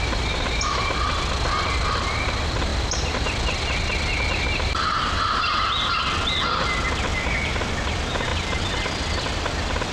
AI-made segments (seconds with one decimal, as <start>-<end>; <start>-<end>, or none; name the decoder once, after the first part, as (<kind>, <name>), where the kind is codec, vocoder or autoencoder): 7.1-7.7 (vocoder, BigVGAN v2); 8.3-9.2